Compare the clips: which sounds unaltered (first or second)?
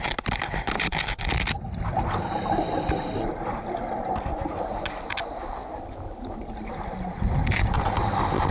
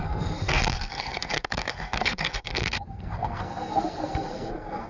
first